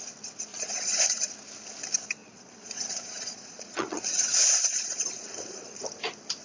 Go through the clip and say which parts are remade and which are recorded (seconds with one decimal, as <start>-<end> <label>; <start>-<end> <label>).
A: 0.0-0.5 recorded; 0.5-1.3 remade; 1.3-2.2 recorded; 2.2-5.8 remade; 5.8-6.4 recorded